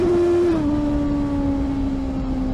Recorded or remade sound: recorded